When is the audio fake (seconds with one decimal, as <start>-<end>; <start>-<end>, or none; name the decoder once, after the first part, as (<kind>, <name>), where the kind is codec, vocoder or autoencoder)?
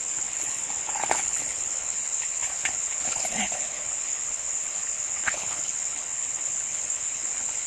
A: 0.0-7.7 (codec, HILCodec)